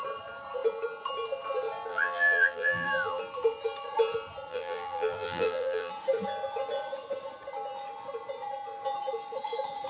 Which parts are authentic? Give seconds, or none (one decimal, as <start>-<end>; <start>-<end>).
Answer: 0.0-1.9; 3.2-4.5; 5.9-9.9